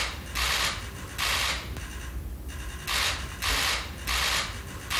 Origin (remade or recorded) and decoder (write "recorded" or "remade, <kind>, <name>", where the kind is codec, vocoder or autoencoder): recorded